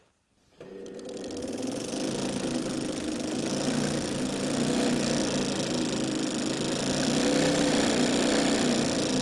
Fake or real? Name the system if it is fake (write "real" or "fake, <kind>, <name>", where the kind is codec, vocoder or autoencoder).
real